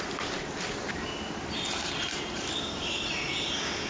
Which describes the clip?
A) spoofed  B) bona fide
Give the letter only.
B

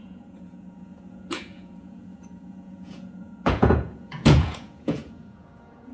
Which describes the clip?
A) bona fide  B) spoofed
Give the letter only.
B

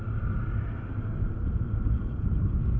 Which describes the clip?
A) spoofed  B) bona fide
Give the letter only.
B